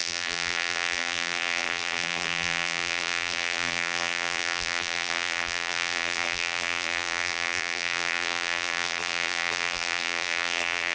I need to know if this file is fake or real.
fake